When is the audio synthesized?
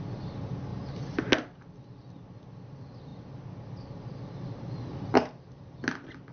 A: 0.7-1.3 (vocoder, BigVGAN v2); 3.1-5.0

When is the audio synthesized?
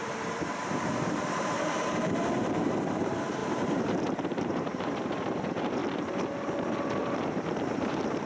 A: 0.0-5.8 (vocoder, BigVGAN v2); 7.0-8.3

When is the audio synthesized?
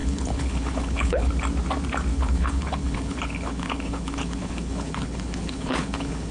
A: 0.0-1.3 (codec, HILCodec); 2.1-6.3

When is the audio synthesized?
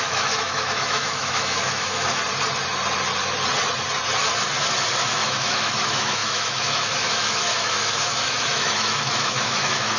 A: 0.0-2.2 (autoencoder, DAC-VAE); 5.0-10.0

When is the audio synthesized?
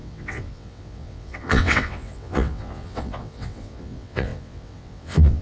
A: 0.0-5.4 (vocoder, WaveNeXt)